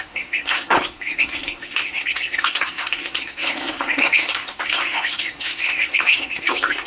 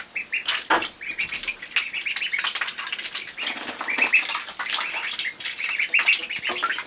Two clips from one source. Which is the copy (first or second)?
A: first